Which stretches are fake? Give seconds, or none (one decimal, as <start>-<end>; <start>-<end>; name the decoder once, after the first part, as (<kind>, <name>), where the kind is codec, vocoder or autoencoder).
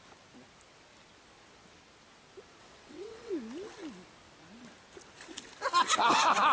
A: 2.6-3.3 (vocoder, WaveNeXt)